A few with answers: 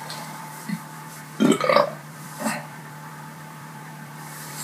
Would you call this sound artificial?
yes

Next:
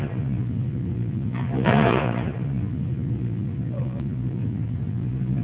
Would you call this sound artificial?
yes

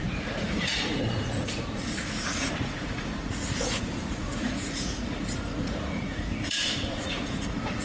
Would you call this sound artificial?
yes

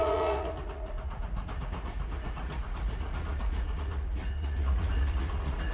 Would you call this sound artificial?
yes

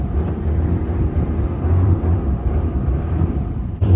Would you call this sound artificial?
yes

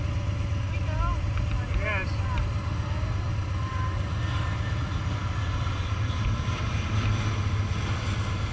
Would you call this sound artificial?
no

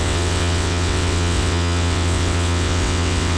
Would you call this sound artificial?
yes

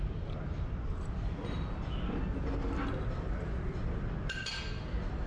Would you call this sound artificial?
no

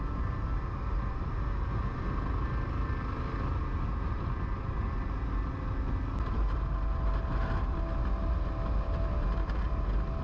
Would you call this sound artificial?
no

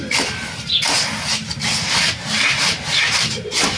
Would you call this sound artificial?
no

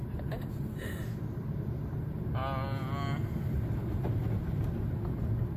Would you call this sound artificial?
no